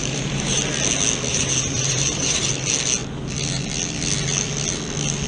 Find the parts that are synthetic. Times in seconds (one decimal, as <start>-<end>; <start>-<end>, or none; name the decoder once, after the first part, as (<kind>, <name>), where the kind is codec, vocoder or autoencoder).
0.0-0.6 (vocoder, BigVGAN v2); 1.3-2.5